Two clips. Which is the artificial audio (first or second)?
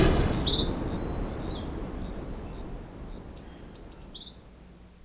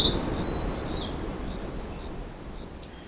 second